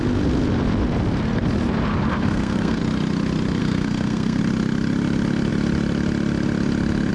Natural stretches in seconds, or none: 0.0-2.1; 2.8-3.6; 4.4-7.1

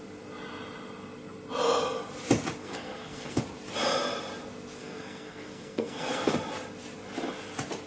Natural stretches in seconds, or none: 0.0-2.6; 3.4-4.8; 6.3-7.9

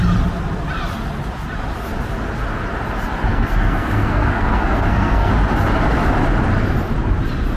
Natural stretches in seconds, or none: 0.0-3.3; 5.3-7.6

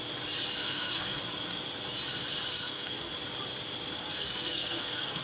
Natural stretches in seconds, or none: 0.0-0.6; 1.2-2.5; 3.1-4.0